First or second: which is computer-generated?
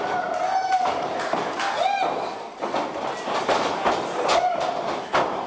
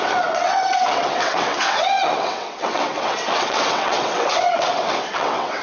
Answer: second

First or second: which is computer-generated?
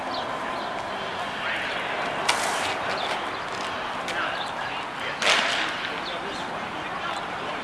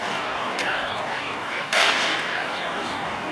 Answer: second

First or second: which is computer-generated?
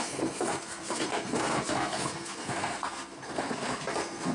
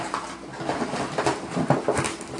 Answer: first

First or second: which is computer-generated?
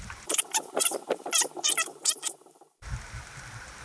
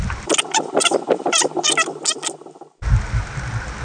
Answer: first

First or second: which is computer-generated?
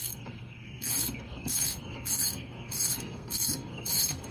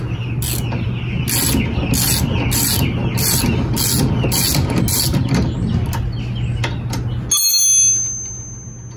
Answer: first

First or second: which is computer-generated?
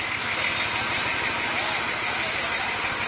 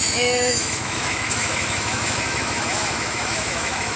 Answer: second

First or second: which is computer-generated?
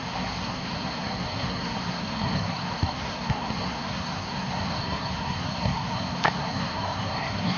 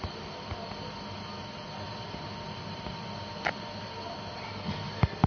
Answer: first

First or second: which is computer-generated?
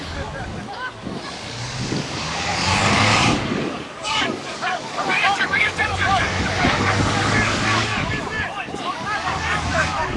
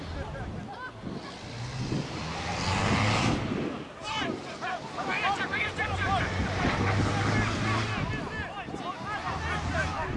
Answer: first